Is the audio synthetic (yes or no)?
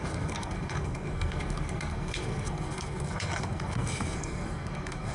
yes